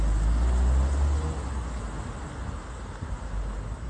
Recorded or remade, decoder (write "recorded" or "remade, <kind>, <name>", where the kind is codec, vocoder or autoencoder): recorded